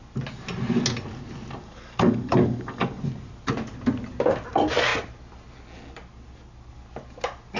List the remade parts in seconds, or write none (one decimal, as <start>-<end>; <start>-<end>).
1.6-3.0